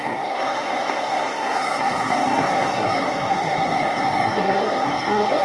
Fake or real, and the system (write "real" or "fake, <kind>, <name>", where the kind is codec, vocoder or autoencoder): fake, codec, SNAC